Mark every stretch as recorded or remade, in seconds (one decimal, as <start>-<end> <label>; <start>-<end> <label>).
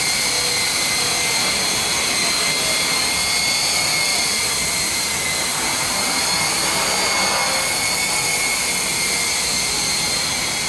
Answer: 0.0-4.1 recorded; 4.1-5.1 remade; 5.1-5.5 recorded; 5.5-6.2 remade; 6.2-10.7 recorded